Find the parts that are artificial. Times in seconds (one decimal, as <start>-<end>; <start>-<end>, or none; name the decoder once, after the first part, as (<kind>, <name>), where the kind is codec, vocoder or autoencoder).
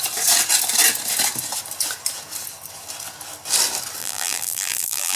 4.0-5.2 (vocoder, BigVGAN v2)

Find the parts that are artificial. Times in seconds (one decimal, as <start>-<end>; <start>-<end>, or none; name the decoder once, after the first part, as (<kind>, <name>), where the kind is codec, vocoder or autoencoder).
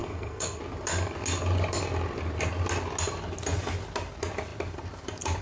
0.0-0.6 (codec, SNAC)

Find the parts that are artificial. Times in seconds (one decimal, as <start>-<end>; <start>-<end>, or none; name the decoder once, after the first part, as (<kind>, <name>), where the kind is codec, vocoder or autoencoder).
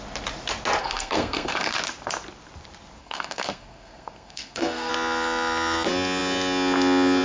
0.8-1.7 (codec, SNAC); 3.0-4.9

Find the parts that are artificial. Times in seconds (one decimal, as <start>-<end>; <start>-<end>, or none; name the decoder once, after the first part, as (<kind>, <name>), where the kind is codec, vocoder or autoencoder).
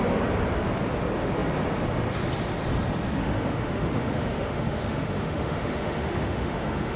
3.2-7.0 (autoencoder, DAC-VAE)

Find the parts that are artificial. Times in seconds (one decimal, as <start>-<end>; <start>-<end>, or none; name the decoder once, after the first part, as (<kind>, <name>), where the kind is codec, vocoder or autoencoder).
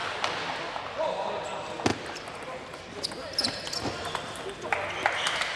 1.9-2.9 (vocoder, BigVGAN v2)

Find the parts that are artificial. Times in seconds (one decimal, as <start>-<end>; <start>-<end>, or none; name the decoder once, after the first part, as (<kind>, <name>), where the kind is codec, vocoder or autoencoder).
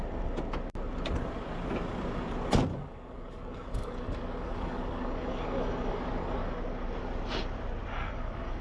2.7-6.6 (codec, DAC); 7.9-8.6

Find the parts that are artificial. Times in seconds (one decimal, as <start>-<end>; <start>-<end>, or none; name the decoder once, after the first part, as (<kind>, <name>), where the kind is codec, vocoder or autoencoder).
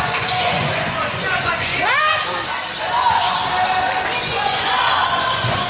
0.0-1.7 (vocoder, Vocos); 2.8-3.4; 4.2-5.7